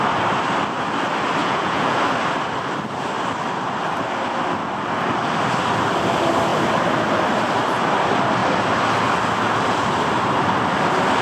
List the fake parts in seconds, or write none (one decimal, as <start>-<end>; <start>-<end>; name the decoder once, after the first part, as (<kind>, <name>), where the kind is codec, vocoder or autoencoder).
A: 1.4-2.0 (vocoder, Vocos)